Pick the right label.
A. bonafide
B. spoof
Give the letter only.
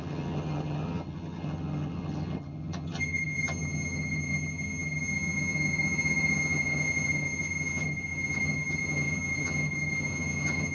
B